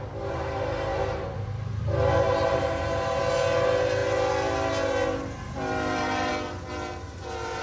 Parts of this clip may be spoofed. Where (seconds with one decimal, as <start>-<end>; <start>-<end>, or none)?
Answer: none